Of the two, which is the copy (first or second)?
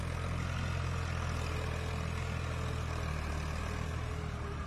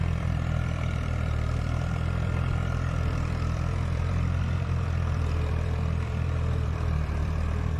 second